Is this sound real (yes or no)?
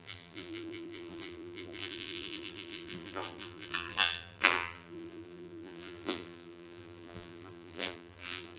no